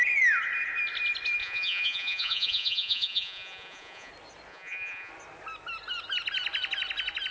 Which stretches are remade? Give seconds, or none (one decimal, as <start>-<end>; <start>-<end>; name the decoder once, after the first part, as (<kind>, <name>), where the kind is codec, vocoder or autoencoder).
1.4-4.1 (vocoder, Vocos); 4.5-5.1